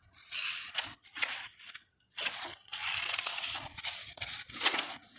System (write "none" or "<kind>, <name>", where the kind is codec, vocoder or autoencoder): vocoder, Vocos